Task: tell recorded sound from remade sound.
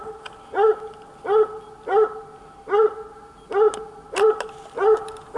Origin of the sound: recorded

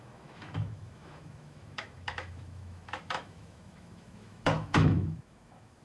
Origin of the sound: remade